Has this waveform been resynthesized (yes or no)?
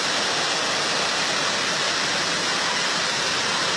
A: no